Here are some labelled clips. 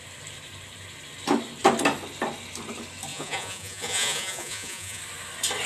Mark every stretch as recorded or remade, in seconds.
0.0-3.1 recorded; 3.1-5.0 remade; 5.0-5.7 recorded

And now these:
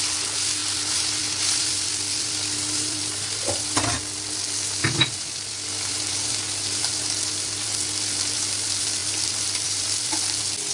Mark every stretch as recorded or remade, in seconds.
0.0-1.6 recorded; 1.6-3.2 remade; 3.2-4.8 recorded; 4.8-6.9 remade; 6.9-9.0 recorded; 9.0-10.1 remade; 10.1-10.7 recorded

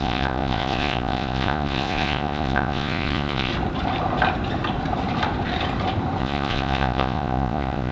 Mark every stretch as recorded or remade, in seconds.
0.0-3.5 remade; 3.5-6.2 recorded; 6.2-7.9 remade